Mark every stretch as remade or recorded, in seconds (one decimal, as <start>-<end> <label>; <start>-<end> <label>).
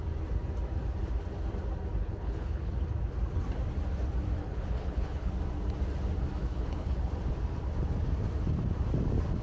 0.0-2.0 recorded; 2.0-2.7 remade; 2.7-4.4 recorded; 4.4-5.3 remade; 5.3-6.4 recorded; 6.4-7.1 remade; 7.1-9.4 recorded